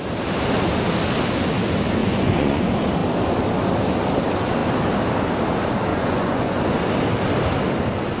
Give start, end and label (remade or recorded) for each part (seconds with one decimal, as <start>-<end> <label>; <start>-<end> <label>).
0.0-2.0 recorded; 2.0-2.6 remade; 2.6-5.9 recorded; 5.9-6.6 remade; 6.6-8.2 recorded